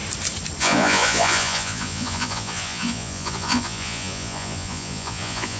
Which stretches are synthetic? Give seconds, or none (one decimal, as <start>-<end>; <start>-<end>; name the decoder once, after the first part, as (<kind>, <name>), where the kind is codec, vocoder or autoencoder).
0.6-5.6 (vocoder, Vocos)